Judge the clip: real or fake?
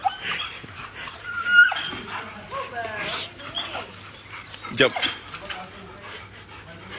real